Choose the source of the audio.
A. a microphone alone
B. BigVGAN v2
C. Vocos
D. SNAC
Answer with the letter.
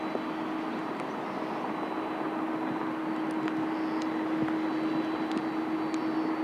A